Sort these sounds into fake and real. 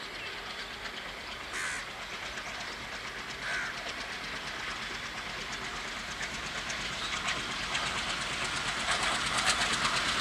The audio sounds real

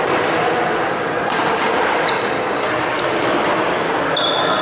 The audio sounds real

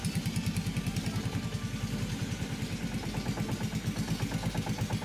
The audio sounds real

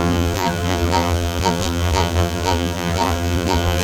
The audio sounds fake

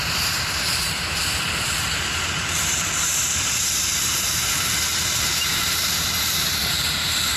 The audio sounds fake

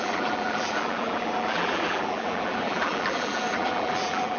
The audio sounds fake